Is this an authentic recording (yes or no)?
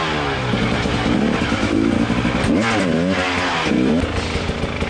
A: yes